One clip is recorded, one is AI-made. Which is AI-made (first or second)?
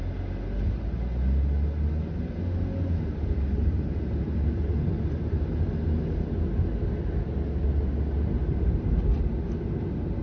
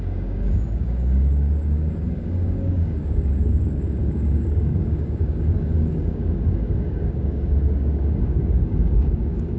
second